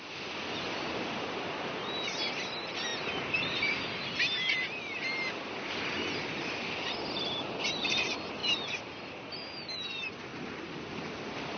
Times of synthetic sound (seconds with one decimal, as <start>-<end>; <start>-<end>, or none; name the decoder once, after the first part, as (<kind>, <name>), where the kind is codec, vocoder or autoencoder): none